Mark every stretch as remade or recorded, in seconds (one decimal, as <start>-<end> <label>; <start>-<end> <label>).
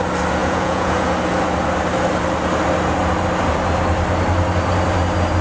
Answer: 0.0-0.4 recorded; 0.4-1.1 remade; 1.1-5.4 recorded